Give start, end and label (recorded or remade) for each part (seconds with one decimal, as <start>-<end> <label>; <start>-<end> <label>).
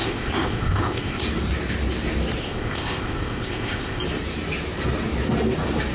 0.0-1.2 remade; 1.2-2.4 recorded; 2.4-4.0 remade; 4.0-5.9 recorded